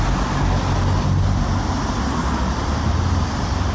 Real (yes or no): yes